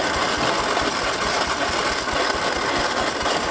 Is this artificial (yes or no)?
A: no